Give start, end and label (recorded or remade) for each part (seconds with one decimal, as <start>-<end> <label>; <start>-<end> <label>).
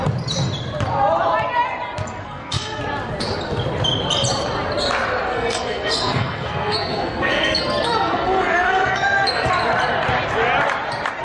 0.0-2.2 recorded; 2.2-2.8 remade; 2.8-5.3 recorded; 5.3-9.5 remade; 9.5-11.2 recorded